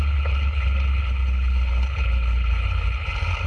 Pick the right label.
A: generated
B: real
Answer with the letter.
A